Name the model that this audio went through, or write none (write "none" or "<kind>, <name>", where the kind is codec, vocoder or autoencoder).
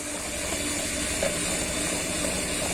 none